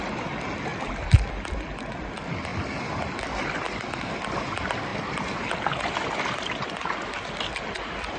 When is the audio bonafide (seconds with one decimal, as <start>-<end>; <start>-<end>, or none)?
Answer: 0.0-8.2